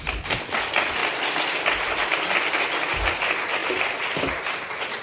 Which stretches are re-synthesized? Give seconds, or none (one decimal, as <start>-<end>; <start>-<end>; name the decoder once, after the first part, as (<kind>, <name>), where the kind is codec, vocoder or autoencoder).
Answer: none